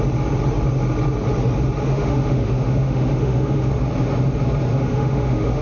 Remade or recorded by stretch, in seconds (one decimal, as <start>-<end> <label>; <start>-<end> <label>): 0.0-1.9 recorded; 1.9-3.7 remade; 3.7-4.7 recorded; 4.7-5.6 remade